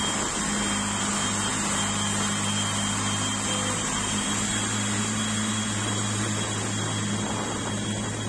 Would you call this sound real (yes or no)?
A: yes